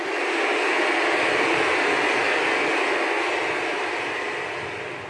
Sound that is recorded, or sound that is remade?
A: recorded